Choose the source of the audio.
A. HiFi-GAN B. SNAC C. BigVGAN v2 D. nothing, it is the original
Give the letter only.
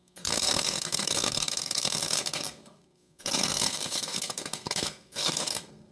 B